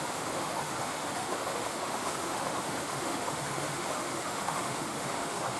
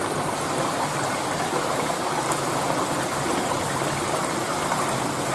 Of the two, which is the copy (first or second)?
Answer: first